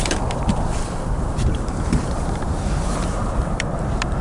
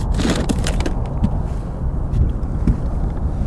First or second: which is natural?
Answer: second